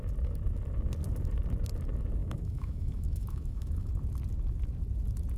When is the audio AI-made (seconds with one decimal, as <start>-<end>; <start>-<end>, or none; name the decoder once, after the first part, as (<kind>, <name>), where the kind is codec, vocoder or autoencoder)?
2.2-3.9 (autoencoder, DAC-VAE)